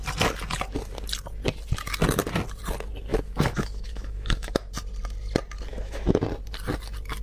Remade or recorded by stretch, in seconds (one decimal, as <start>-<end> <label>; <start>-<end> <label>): 0.0-3.1 recorded; 3.1-4.7 remade; 4.7-5.7 recorded; 5.7-6.2 remade; 6.2-7.2 recorded